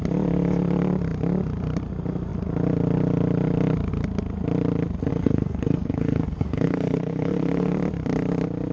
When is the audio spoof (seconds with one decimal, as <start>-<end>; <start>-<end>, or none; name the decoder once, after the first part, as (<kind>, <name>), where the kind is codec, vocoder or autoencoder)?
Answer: 5.1-7.7 (codec, SNAC)